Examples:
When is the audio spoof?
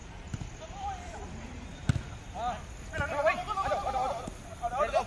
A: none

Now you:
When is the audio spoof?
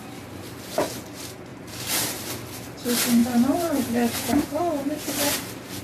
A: 1.5-2.3 (vocoder, BigVGAN v2); 3.2-4.6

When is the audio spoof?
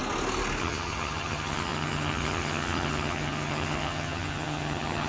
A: 0.6-5.1 (vocoder, HiFi-GAN)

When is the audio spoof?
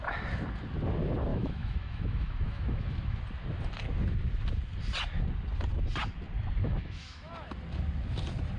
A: 1.3-3.2 (autoencoder, DAC-VAE); 6.6-7.3